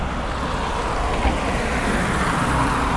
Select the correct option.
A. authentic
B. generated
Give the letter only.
A